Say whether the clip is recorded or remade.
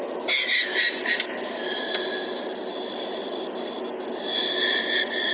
recorded